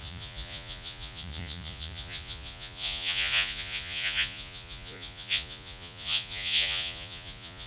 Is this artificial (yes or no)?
yes